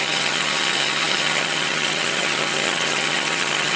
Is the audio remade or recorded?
remade